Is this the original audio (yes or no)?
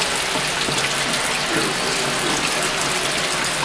yes